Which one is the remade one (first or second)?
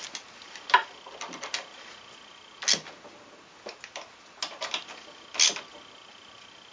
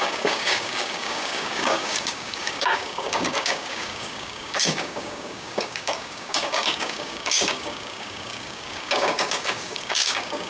second